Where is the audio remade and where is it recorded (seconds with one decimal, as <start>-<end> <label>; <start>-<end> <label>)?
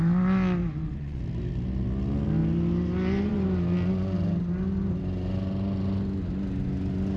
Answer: 0.0-0.6 recorded; 0.6-1.2 remade; 1.2-7.2 recorded